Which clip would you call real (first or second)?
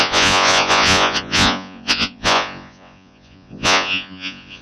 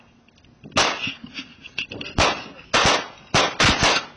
second